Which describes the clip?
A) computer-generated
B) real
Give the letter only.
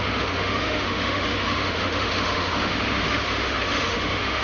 A